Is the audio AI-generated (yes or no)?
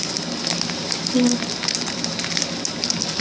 no